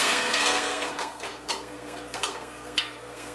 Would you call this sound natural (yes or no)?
no